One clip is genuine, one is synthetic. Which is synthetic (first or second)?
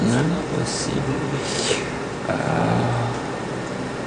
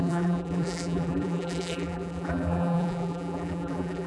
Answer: second